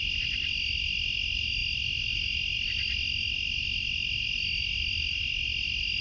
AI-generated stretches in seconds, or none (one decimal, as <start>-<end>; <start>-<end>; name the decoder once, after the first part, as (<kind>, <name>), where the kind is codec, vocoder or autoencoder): none